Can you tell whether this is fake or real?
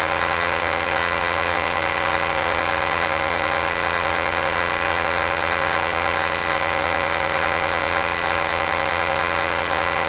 fake